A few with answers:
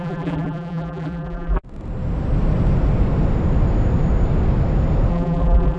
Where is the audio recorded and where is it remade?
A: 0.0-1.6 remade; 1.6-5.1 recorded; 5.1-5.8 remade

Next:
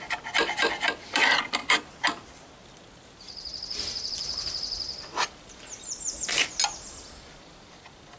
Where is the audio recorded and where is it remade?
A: 0.0-8.2 recorded

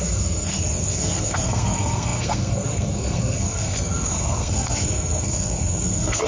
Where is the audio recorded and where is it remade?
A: 0.0-6.3 remade

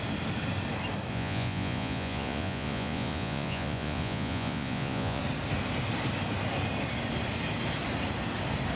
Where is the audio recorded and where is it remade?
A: 0.0-1.1 recorded; 1.1-5.2 remade; 5.2-8.8 recorded